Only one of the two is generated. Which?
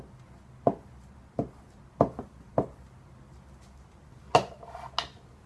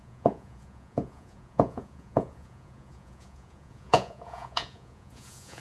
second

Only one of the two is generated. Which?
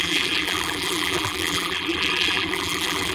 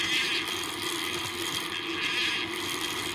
first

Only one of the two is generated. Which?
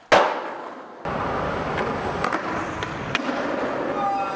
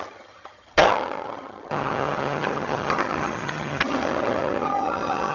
second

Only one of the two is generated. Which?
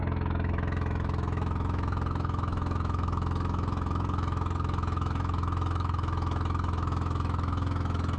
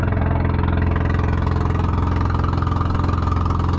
first